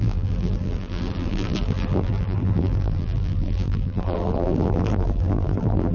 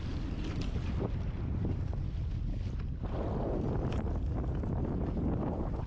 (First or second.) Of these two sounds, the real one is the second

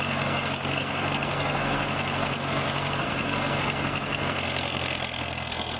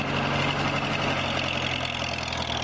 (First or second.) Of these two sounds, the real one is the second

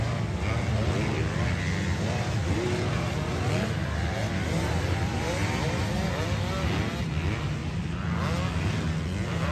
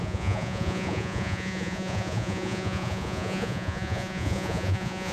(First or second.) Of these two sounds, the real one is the first